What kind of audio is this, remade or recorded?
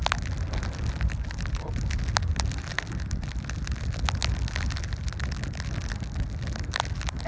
recorded